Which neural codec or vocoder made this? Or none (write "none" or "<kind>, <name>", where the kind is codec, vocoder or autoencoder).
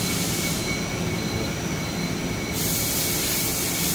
none